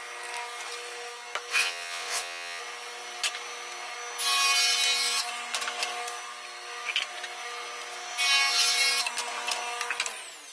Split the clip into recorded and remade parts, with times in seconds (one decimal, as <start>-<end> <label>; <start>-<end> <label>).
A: 0.0-1.5 recorded; 1.5-2.6 remade; 2.6-10.5 recorded